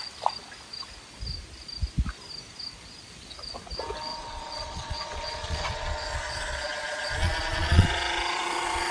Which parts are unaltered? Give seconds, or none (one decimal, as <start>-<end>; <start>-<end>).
0.0-4.1